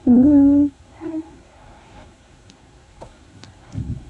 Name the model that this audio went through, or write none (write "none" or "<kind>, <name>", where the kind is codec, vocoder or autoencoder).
codec, SNAC